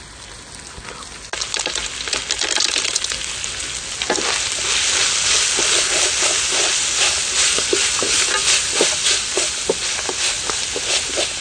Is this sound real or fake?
real